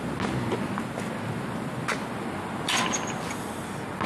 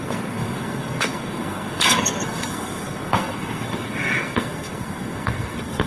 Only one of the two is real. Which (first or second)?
first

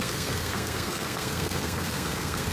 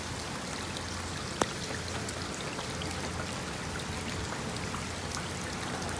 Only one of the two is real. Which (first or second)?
second